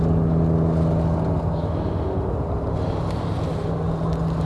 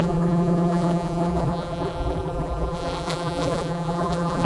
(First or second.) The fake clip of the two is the second